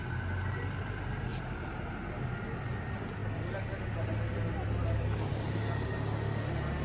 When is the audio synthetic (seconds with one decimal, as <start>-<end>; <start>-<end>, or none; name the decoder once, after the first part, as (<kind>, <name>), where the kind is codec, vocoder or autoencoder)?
1.3-2.2 (vocoder, BigVGAN v2)